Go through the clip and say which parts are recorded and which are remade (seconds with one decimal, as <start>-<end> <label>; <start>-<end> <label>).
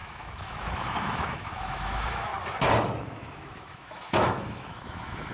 0.0-2.3 remade; 2.3-3.0 recorded; 3.0-5.3 remade